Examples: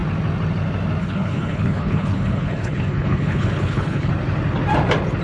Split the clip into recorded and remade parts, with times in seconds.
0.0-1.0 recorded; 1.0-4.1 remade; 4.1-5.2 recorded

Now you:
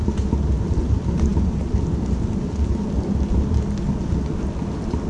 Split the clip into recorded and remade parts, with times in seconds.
0.0-5.1 recorded